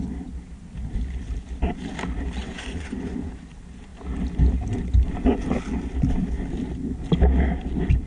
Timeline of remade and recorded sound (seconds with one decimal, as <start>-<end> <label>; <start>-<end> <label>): 0.0-2.4 recorded; 2.4-3.4 remade; 3.4-8.1 recorded